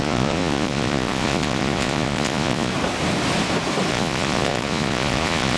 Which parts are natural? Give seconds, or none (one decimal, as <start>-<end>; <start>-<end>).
2.7-3.9